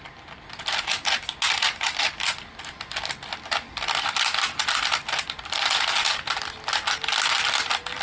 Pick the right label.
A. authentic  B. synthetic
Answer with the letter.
A